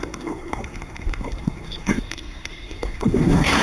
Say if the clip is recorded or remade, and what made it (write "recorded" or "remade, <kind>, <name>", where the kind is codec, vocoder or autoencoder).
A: remade, codec, SNAC